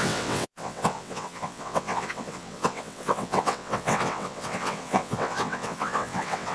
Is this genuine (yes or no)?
no